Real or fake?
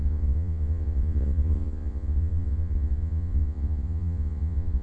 fake